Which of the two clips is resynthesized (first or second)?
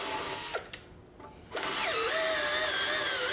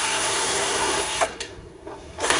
second